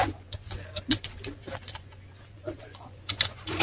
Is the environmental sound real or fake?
fake